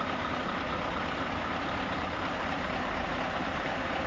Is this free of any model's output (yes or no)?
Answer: no